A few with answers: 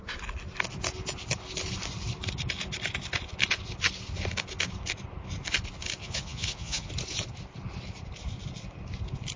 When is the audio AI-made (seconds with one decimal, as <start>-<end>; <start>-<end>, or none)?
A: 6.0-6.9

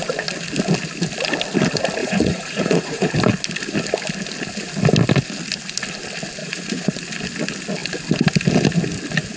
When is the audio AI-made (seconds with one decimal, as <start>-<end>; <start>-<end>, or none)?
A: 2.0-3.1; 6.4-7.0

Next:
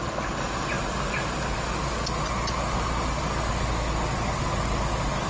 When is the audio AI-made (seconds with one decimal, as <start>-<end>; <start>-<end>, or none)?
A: none

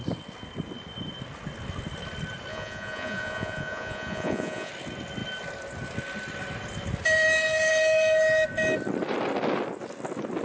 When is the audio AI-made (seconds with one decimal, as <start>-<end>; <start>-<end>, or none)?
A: 2.5-4.7

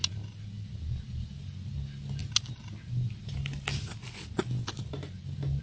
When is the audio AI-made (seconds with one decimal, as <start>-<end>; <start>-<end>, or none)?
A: none

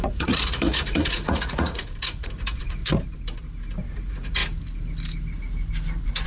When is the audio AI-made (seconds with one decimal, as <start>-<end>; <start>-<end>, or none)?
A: 0.0-2.8; 3.9-4.4

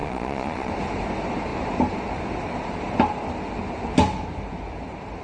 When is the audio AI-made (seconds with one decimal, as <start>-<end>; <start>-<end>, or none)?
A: 0.0-0.7